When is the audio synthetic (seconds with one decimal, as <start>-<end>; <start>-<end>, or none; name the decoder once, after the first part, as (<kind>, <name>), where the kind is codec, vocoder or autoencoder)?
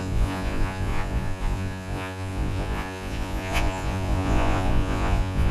0.0-5.5 (vocoder, Vocos)